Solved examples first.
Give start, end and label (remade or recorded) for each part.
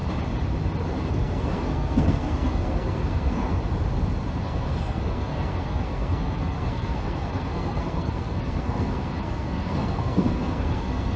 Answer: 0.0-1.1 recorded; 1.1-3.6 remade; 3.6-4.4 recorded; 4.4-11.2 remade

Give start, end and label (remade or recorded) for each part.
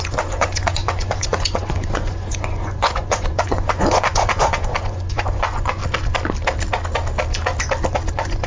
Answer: 0.0-5.8 remade; 5.8-8.1 recorded; 8.1-8.5 remade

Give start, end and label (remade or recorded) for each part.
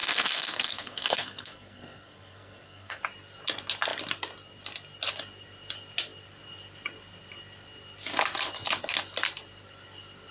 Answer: 0.0-3.0 remade; 3.0-10.3 recorded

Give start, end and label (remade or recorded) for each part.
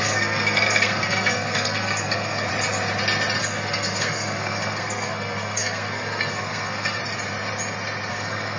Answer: 0.0-2.5 remade; 2.5-3.4 recorded; 3.4-7.0 remade; 7.0-8.1 recorded; 8.1-8.6 remade